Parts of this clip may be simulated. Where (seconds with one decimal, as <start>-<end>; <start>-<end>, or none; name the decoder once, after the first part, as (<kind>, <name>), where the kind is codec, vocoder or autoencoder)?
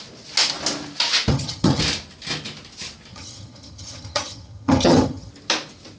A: 1.3-1.8 (vocoder, HiFi-GAN); 3.1-5.3